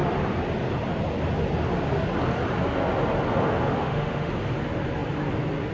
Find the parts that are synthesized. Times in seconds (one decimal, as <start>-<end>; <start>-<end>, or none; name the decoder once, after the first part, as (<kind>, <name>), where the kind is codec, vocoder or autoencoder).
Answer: 3.8-4.3 (autoencoder, DAC-VAE)